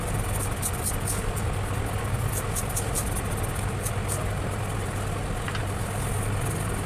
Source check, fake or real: real